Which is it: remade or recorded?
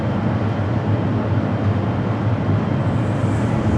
recorded